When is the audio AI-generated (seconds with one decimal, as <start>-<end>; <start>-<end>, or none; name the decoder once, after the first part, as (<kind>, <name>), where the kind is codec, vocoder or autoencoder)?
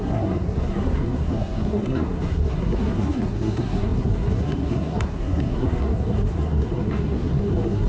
0.0-7.9 (codec, SNAC)